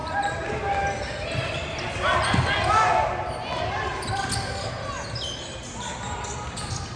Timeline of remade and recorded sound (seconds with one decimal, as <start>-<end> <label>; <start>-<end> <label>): 0.0-7.0 recorded